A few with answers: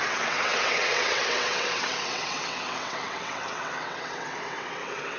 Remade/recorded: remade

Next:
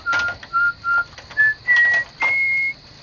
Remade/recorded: recorded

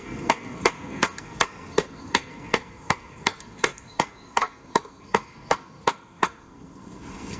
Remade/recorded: remade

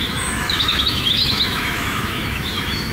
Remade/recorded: remade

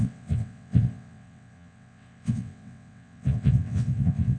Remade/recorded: remade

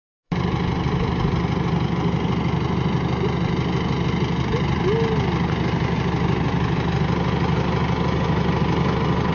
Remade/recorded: recorded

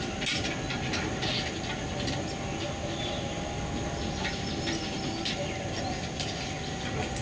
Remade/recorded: recorded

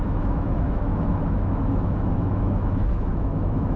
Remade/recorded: remade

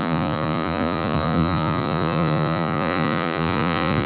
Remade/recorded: remade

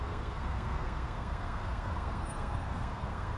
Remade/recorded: remade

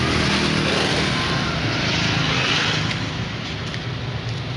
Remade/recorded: recorded